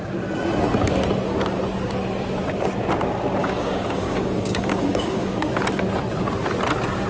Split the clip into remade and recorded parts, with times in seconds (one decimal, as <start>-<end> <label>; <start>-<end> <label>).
0.0-3.4 recorded; 3.4-5.6 remade; 5.6-7.1 recorded